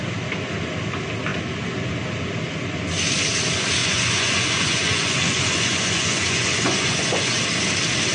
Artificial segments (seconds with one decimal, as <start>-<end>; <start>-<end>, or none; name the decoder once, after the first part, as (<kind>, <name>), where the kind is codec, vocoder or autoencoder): 3.8-7.4 (vocoder, Vocos)